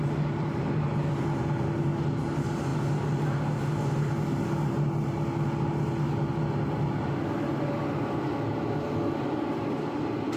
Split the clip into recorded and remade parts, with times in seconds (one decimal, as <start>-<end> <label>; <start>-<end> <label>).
0.0-10.4 recorded